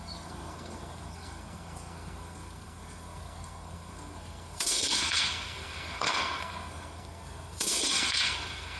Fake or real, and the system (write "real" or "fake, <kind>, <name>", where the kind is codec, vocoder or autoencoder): fake, codec, SNAC